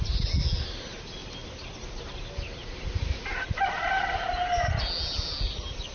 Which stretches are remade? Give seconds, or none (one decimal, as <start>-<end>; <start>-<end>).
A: none